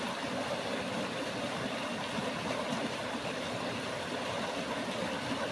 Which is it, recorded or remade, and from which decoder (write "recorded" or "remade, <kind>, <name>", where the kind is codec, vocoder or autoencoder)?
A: recorded